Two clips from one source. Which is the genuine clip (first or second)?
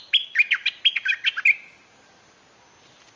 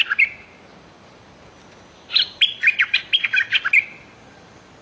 first